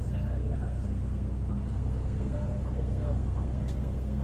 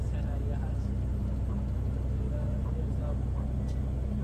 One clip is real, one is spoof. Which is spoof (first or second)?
first